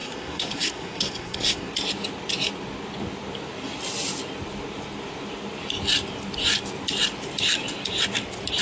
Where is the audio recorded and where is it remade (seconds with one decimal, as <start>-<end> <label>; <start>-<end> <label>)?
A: 0.0-1.7 remade; 1.7-8.6 recorded